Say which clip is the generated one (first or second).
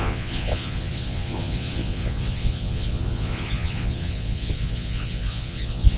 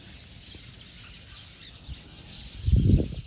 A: first